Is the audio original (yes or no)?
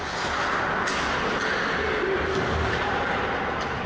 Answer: yes